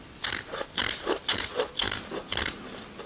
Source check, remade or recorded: recorded